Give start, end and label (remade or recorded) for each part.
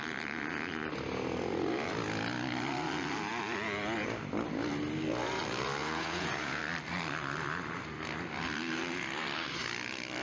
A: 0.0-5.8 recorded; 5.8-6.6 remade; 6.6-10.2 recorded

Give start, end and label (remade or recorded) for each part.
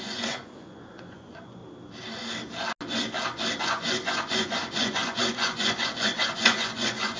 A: 0.0-1.6 remade; 1.6-3.6 recorded; 3.6-7.2 remade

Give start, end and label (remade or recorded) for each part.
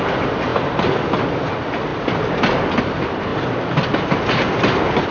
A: 0.0-5.1 recorded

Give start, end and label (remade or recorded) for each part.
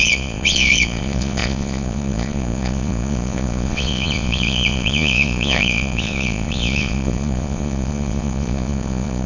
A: 0.0-9.3 remade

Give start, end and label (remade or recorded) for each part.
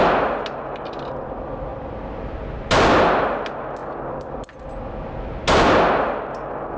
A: 0.0-6.8 recorded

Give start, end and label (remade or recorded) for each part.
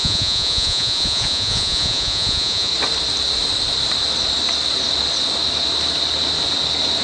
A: 0.0-2.7 remade; 2.7-7.0 recorded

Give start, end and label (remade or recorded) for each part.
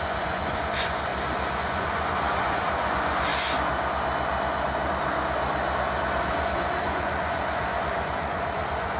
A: 0.0-1.1 remade; 1.1-1.6 recorded; 1.6-3.3 remade; 3.3-6.2 recorded; 6.2-9.0 remade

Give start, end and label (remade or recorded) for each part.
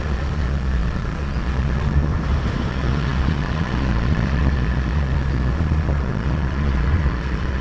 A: 0.0-2.1 remade; 2.1-2.7 recorded; 2.7-7.6 remade